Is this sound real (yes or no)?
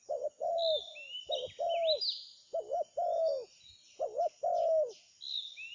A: yes